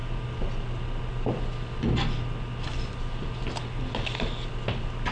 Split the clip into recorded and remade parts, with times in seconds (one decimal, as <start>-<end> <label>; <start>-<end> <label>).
0.0-5.1 recorded